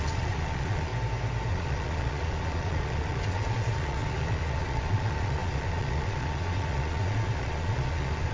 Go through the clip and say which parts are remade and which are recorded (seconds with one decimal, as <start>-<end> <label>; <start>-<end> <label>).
0.0-0.9 remade; 0.9-1.5 recorded; 1.5-8.3 remade